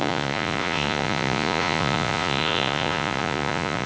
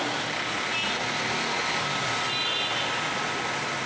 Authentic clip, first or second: second